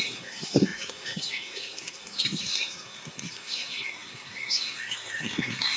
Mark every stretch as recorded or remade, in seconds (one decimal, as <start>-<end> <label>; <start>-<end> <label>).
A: 0.0-5.8 remade